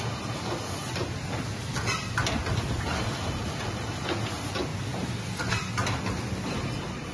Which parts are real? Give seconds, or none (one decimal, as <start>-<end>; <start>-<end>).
0.0-7.1